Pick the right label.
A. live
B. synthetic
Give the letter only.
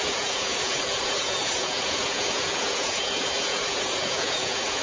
B